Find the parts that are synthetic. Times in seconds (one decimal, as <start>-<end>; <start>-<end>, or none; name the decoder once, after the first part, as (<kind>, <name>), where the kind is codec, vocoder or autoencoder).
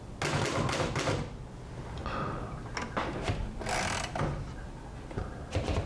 none